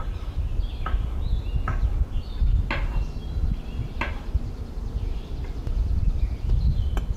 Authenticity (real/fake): real